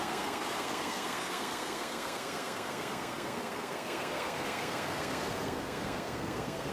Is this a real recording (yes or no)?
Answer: no